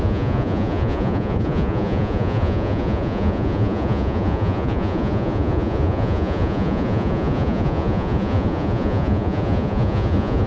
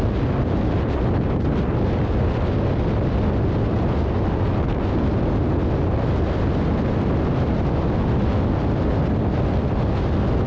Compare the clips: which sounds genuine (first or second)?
second